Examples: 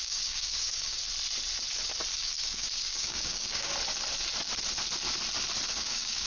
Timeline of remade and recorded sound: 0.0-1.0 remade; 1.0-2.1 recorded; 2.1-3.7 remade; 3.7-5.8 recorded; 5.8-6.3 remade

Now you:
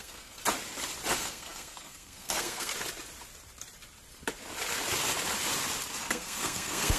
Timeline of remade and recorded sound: 0.0-0.4 remade; 0.4-1.1 recorded; 1.1-2.7 remade; 2.7-6.0 recorded; 6.0-7.0 remade

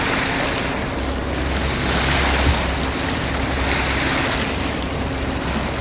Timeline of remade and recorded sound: 0.0-5.8 recorded

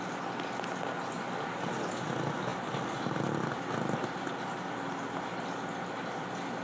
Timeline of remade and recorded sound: 0.0-6.6 recorded